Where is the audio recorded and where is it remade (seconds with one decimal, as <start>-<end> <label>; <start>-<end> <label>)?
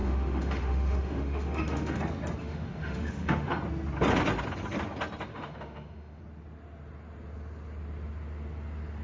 0.0-2.0 remade; 2.0-2.4 recorded; 2.4-3.5 remade; 3.5-5.3 recorded; 5.3-6.2 remade; 6.2-9.0 recorded